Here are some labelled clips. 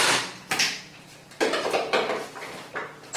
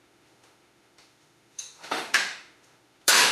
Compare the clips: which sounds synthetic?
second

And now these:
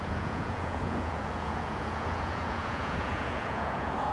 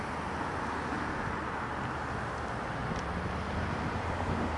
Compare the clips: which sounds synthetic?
first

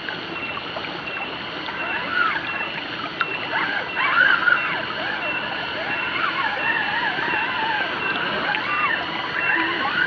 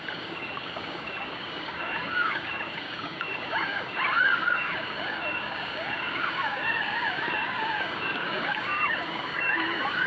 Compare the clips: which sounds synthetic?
second